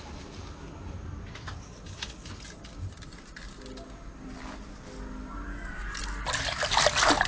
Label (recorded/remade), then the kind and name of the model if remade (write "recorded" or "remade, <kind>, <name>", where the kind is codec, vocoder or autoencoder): recorded